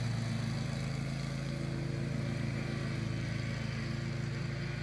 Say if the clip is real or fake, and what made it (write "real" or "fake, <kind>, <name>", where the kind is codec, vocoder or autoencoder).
real